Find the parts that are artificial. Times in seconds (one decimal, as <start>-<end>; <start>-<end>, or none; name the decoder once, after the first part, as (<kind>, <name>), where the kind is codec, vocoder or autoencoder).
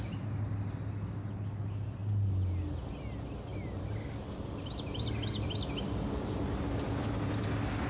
3.5-5.6 (vocoder, BigVGAN v2)